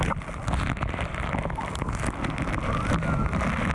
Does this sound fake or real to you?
real